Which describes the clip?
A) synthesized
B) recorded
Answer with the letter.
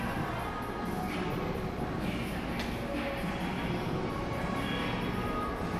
B